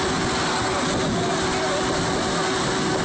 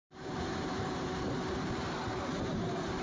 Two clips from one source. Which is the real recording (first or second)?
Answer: first